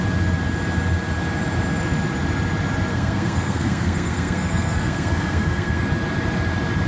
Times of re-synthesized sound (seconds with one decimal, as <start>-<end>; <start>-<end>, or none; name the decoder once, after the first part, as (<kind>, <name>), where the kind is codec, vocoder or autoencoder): 2.9-5.8 (codec, SNAC)